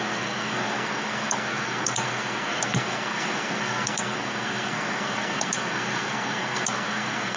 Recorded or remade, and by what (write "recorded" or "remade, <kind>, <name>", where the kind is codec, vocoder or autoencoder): remade, codec, SNAC